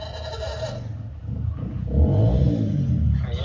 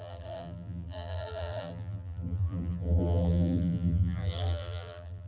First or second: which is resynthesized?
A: second